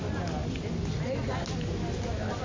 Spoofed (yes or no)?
no